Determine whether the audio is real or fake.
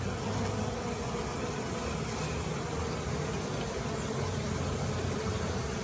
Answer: real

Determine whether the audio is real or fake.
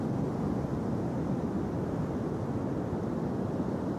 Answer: real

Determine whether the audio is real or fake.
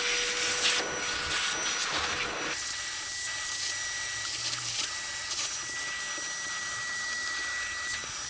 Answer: real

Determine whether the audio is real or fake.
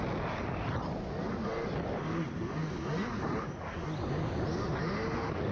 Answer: real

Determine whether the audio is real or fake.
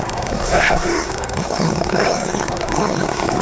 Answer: fake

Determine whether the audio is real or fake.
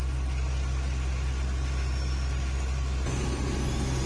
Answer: real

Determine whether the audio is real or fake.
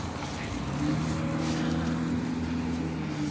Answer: real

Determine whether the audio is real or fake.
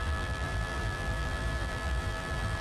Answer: fake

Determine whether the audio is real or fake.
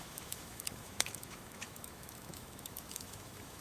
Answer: fake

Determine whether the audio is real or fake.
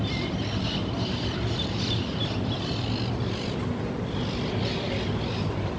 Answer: fake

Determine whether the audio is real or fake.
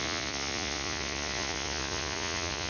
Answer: fake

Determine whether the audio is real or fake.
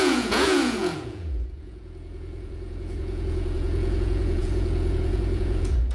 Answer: fake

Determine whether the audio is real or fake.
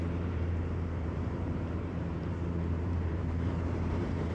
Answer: fake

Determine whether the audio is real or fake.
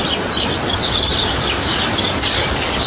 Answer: real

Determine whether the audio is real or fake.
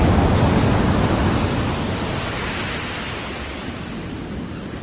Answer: real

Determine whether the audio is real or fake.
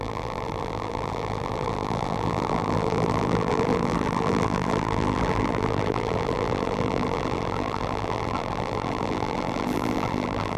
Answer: fake